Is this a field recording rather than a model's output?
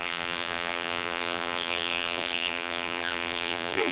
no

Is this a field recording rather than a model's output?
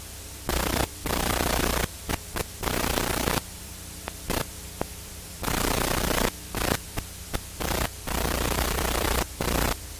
no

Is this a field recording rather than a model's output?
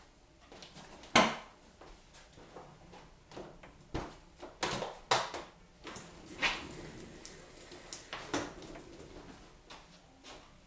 yes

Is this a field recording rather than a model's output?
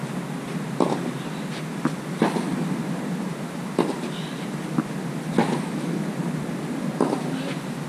yes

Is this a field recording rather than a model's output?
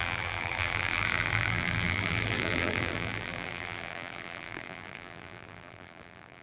no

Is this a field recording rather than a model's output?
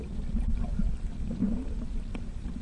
yes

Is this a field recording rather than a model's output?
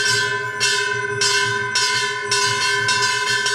yes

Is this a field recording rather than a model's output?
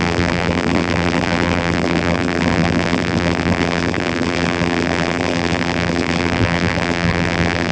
no